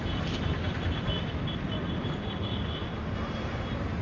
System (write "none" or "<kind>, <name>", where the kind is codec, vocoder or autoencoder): none